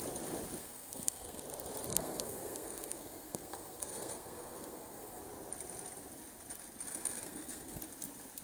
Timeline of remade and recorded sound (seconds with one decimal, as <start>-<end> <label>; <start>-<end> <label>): 0.0-0.6 recorded; 0.6-1.4 remade; 1.4-1.9 recorded; 1.9-5.2 remade; 5.2-6.9 recorded; 6.9-7.8 remade; 7.8-8.4 recorded